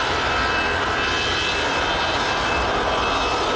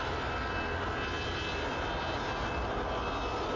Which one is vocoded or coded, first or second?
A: first